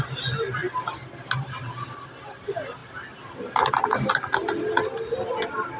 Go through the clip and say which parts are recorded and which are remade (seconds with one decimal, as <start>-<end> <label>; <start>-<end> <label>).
0.0-5.8 recorded